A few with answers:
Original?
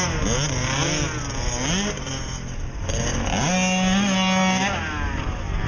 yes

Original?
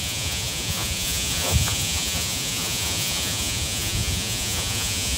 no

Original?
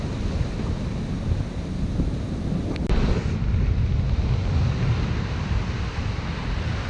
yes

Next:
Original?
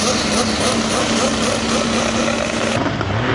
yes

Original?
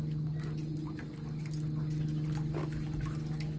yes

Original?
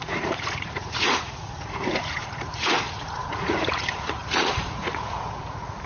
no